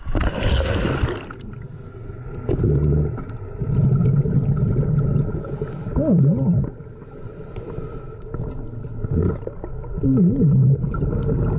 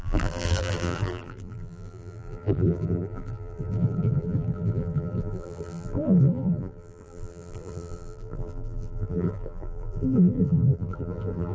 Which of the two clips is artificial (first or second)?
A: second